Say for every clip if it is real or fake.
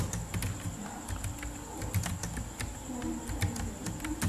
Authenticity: real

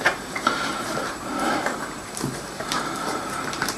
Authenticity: fake